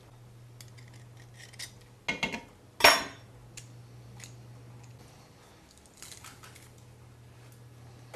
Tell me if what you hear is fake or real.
real